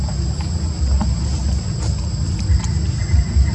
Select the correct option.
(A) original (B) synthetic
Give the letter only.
A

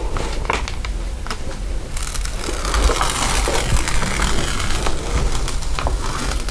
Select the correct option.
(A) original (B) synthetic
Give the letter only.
A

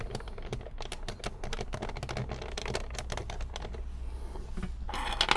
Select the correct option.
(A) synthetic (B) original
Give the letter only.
B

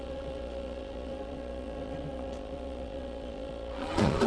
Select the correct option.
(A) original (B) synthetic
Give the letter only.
B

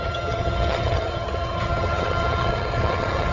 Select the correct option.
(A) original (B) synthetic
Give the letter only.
B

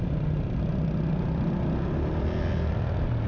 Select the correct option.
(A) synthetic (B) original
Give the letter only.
B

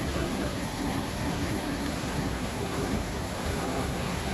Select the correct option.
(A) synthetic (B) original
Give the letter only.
A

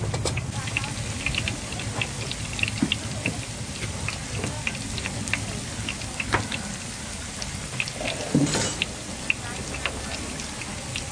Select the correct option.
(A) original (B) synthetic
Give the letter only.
A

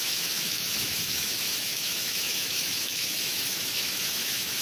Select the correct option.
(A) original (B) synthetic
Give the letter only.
B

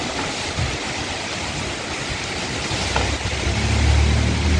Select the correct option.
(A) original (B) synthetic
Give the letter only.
A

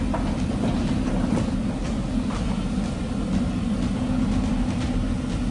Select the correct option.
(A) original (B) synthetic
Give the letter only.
A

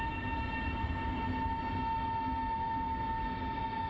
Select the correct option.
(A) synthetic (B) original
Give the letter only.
B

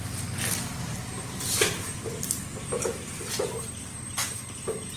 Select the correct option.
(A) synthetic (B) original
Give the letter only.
B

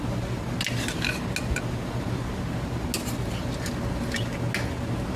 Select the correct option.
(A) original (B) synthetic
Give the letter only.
A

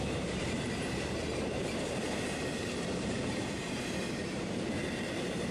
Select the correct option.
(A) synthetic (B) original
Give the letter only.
A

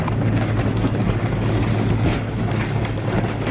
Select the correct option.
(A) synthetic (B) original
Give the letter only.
A